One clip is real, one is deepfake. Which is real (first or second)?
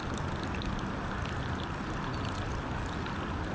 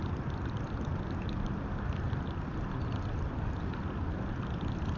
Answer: first